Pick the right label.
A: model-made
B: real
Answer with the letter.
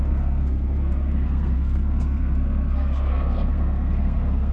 A